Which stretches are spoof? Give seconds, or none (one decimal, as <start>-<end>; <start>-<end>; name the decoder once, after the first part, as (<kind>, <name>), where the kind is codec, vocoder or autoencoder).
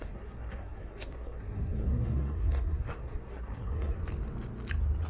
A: 0.0-4.0 (codec, SNAC)